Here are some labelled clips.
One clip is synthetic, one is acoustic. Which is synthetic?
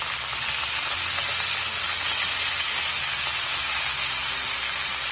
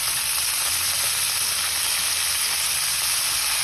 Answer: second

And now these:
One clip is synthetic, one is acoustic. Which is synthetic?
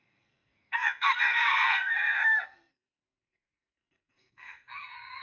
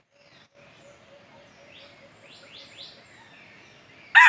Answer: first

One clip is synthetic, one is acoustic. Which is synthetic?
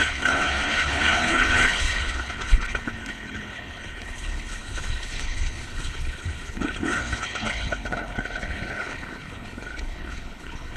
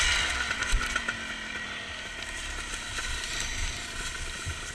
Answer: first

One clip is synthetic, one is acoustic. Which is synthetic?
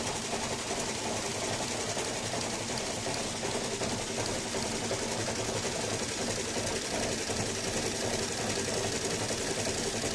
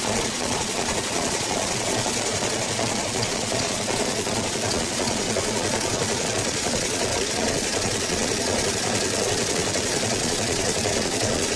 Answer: second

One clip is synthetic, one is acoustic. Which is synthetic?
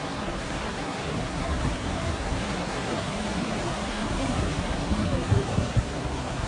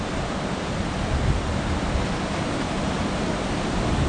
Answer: first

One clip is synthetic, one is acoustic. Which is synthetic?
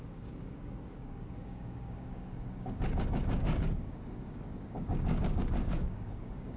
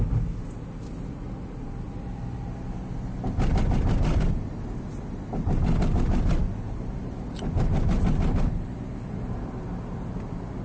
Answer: first